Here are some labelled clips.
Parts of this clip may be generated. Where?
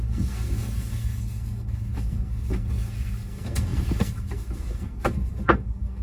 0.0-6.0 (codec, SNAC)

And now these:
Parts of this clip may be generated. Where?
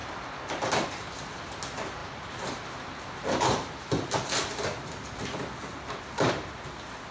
none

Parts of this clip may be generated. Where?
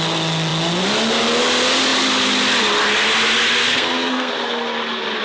3.6-4.3 (codec, SNAC)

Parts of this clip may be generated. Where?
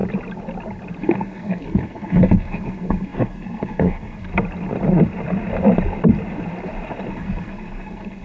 1.0-4.3 (codec, SNAC); 7.1-8.2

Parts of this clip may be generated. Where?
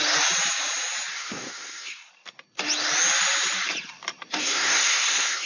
1.1-2.1 (codec, SNAC); 4.4-5.5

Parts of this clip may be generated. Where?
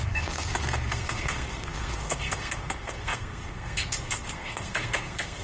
0.0-5.4 (codec, SNAC)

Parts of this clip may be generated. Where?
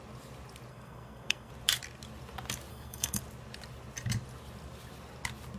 0.7-1.5 (codec, SNAC); 2.7-3.2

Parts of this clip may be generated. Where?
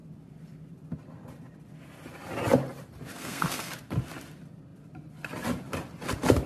3.1-3.7 (codec, SNAC)